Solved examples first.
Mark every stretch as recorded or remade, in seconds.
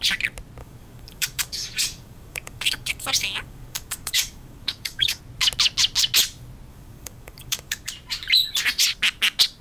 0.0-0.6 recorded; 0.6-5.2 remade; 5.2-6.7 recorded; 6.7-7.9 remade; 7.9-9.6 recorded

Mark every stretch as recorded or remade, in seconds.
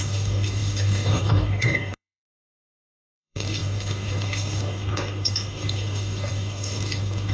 0.0-7.3 remade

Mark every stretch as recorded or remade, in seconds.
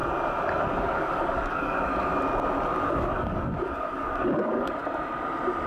0.0-0.6 recorded; 0.6-2.1 remade; 2.1-2.9 recorded; 2.9-4.8 remade; 4.8-5.7 recorded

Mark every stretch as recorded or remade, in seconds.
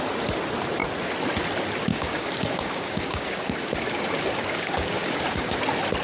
0.0-1.9 recorded; 1.9-5.5 remade; 5.5-6.0 recorded